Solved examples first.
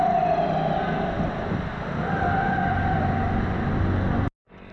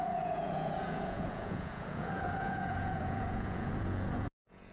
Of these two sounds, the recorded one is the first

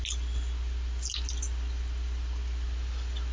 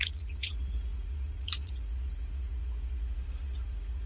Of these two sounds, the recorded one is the first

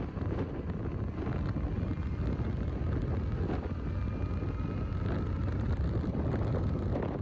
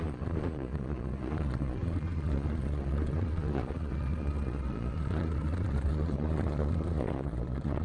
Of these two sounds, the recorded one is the first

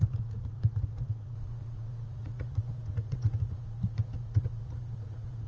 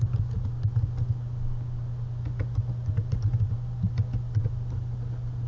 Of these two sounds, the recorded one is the second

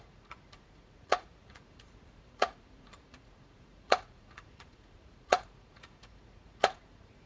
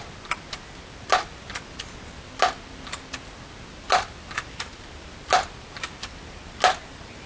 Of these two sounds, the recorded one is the second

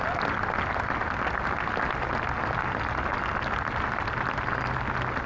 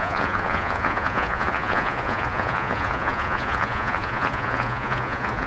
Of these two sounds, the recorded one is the first